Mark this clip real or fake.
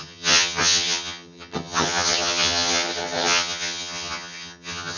fake